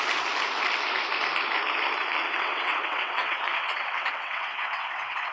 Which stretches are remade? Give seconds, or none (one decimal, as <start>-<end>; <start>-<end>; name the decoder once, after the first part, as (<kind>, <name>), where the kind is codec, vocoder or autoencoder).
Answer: 2.0-5.3 (vocoder, WaveNeXt)